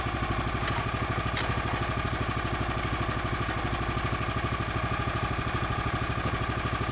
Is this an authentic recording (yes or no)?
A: yes